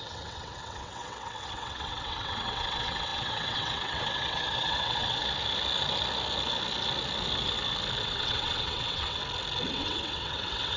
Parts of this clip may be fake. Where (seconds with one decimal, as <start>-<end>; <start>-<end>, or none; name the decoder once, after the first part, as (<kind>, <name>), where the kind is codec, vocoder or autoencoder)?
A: 0.0-5.2 (vocoder, WaveNeXt); 8.0-9.2; 9.7-10.8

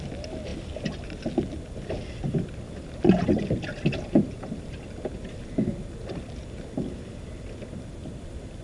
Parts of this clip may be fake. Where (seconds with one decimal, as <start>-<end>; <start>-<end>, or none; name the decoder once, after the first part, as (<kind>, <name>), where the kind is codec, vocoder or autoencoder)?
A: none